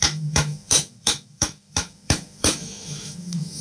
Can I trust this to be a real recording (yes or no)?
no